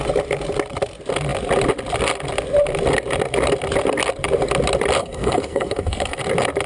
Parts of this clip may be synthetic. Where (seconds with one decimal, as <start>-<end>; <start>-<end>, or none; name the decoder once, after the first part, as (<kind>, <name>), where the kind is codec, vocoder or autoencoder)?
5.0-6.2 (codec, SNAC)